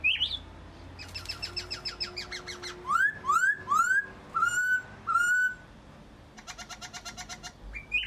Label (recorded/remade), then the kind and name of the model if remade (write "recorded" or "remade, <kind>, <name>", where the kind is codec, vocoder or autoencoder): recorded